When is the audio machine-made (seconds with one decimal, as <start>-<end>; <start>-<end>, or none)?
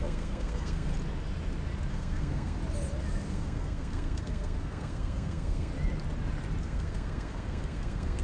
0.0-0.9; 1.9-2.6; 3.3-5.7; 6.6-8.2